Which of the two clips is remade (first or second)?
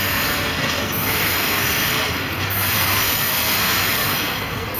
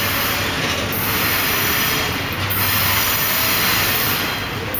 first